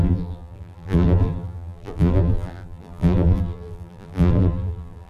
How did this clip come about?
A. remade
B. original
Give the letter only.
A